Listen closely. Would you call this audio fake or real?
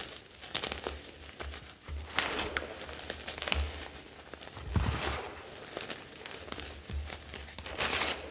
real